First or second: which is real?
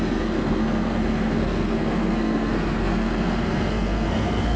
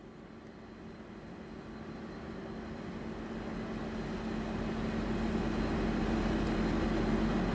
second